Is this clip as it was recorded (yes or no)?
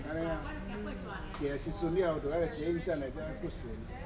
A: yes